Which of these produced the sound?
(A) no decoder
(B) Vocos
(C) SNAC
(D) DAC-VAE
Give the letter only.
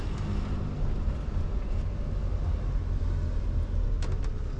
A